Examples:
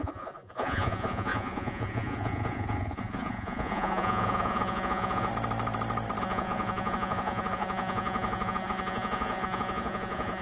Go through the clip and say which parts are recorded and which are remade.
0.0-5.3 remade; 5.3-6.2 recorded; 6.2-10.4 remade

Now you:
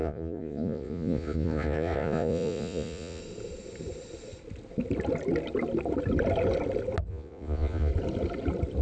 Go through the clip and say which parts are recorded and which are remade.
0.0-3.2 remade; 3.2-7.1 recorded; 7.1-7.9 remade; 7.9-8.8 recorded

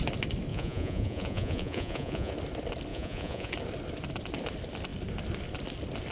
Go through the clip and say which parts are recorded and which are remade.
0.0-0.5 recorded; 0.5-2.3 remade; 2.3-2.9 recorded; 2.9-3.5 remade; 3.5-6.1 recorded

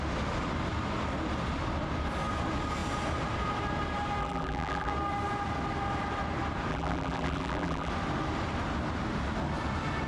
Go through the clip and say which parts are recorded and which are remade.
0.0-4.2 recorded; 4.2-4.9 remade; 4.9-6.7 recorded; 6.7-7.9 remade; 7.9-10.1 recorded

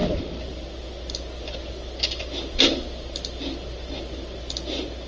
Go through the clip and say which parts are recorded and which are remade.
0.0-5.1 recorded

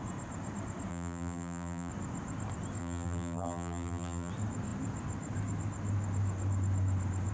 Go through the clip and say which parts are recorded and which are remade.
0.0-0.9 recorded; 0.9-1.9 remade; 1.9-2.8 recorded; 2.8-4.3 remade; 4.3-7.3 recorded

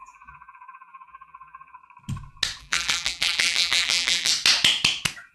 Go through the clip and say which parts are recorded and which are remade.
0.0-1.8 remade; 1.8-2.6 recorded; 2.6-4.3 remade; 4.3-5.3 recorded

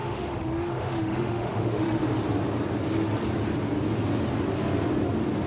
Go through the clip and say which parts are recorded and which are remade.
0.0-2.0 remade; 2.0-5.5 recorded